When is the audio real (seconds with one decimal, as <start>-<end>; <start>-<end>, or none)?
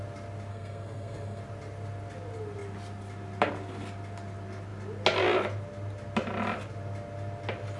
0.0-0.5; 1.4-7.8